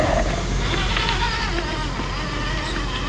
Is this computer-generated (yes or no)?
no